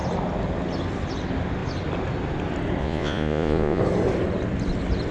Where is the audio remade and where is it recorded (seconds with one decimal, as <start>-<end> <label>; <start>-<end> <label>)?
0.0-2.8 recorded; 2.8-3.8 remade; 3.8-5.1 recorded